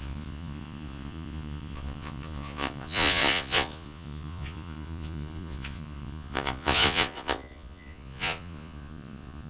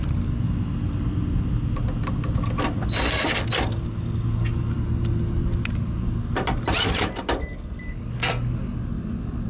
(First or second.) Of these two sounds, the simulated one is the first